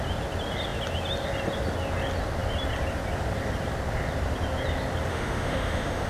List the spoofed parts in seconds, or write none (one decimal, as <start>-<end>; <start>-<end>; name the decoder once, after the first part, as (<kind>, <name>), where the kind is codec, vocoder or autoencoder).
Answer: 5.1-6.1 (autoencoder, DAC-VAE)